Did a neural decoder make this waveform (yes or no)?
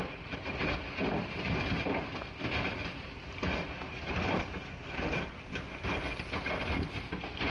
no